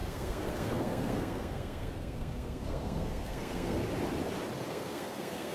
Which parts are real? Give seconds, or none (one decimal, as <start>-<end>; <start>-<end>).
3.8-4.7